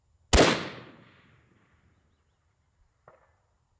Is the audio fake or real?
real